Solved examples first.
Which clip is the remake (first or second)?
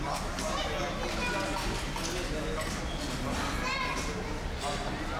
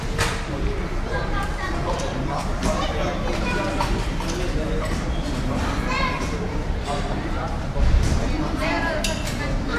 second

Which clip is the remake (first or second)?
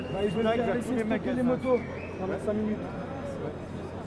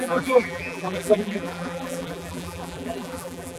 second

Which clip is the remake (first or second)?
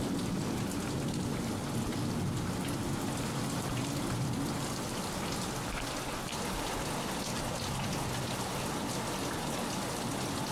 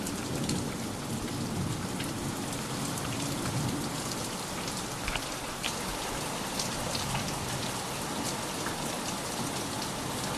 second